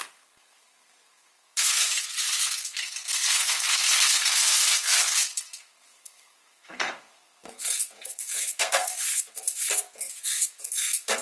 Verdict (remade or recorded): remade